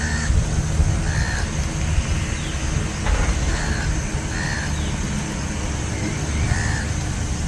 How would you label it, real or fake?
real